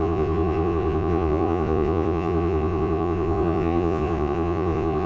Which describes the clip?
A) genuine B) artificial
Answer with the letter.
B